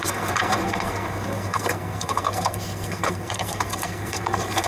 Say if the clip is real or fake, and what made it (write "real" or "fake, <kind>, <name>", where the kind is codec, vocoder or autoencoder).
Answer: fake, codec, SNAC